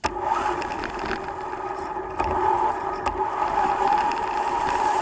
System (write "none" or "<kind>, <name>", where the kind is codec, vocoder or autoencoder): none